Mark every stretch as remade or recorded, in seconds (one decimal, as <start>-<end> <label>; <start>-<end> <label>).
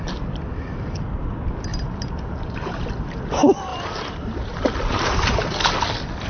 0.0-1.7 recorded; 1.7-2.9 remade; 2.9-3.7 recorded; 3.7-5.6 remade; 5.6-6.3 recorded